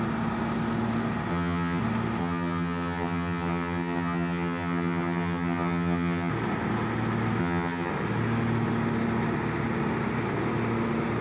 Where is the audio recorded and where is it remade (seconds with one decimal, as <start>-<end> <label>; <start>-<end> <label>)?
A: 0.0-1.3 recorded; 1.3-1.8 remade; 1.8-2.2 recorded; 2.2-6.3 remade; 6.3-7.4 recorded; 7.4-7.9 remade; 7.9-11.2 recorded